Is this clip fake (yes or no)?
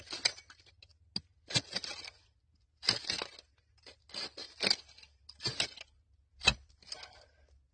no